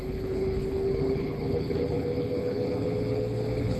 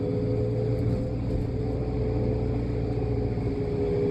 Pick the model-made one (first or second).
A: first